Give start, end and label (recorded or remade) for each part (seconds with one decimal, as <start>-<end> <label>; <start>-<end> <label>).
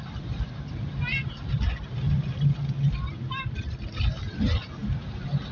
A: 0.0-5.5 recorded